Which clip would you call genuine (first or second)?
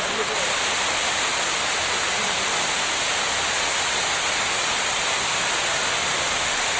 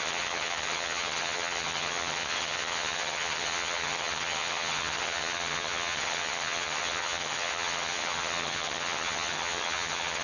first